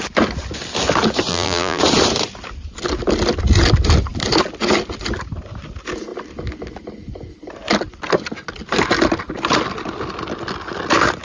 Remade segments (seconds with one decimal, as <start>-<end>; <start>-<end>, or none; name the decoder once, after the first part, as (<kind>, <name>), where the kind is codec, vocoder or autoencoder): 1.3-1.8 (vocoder, BigVGAN v2)